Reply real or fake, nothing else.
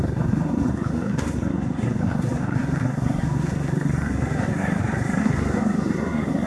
fake